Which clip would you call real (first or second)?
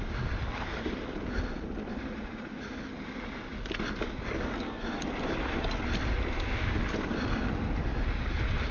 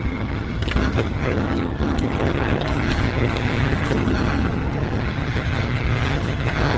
first